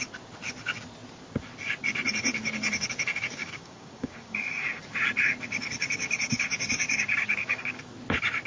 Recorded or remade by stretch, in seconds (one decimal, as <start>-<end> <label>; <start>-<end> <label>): 0.0-3.4 recorded; 3.4-4.8 remade; 4.8-6.0 recorded; 6.0-7.8 remade; 7.8-8.5 recorded